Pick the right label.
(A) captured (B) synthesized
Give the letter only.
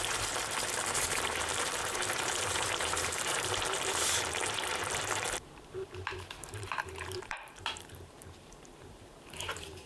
B